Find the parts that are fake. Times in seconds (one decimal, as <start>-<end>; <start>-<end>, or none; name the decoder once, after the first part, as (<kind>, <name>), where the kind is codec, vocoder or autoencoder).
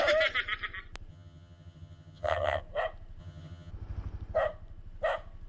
1.1-2.6 (vocoder, HiFi-GAN); 3.2-3.7